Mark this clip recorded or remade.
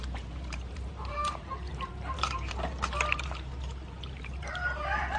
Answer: remade